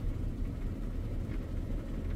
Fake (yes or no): no